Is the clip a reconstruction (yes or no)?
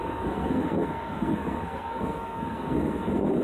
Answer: yes